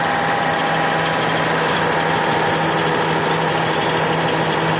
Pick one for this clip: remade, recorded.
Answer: recorded